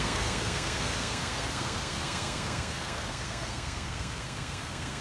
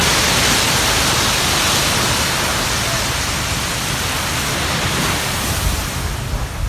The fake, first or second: first